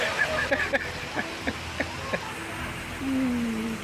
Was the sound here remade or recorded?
recorded